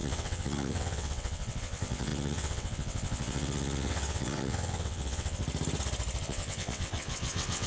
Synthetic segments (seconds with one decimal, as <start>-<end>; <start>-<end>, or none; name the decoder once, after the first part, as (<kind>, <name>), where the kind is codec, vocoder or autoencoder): 0.0-5.4 (vocoder, WaveNeXt); 6.2-7.7